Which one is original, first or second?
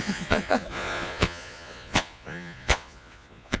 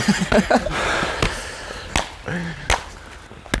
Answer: second